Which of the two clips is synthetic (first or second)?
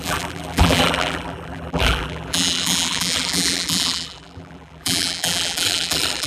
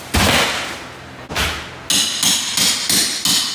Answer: first